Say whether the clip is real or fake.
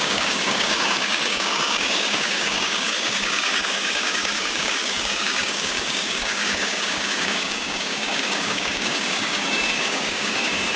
fake